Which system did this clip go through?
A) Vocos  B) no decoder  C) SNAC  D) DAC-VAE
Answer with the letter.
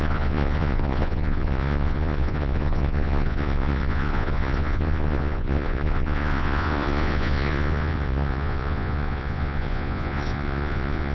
A